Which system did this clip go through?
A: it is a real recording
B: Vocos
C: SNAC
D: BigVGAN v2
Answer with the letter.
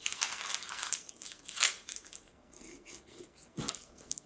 C